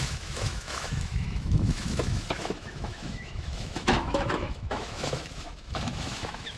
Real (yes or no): no